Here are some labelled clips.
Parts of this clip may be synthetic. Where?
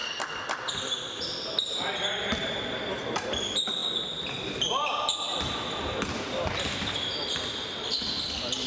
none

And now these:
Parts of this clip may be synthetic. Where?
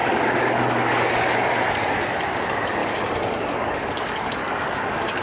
0.0-2.2; 2.8-5.2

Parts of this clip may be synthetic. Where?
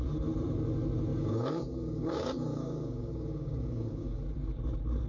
1.1-4.2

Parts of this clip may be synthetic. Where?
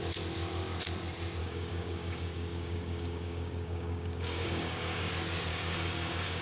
1.4-5.1; 5.5-6.4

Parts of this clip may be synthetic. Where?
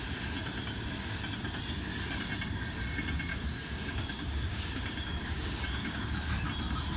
3.3-6.1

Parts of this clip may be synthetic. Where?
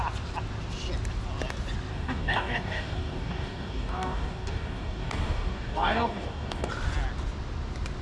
1.9-6.7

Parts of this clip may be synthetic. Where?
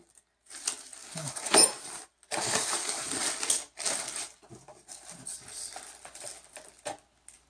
1.0-1.7; 2.4-3.1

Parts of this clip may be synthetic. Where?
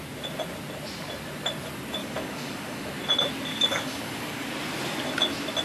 2.0-2.9; 3.5-4.5